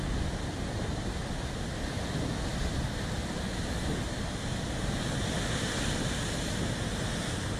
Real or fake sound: real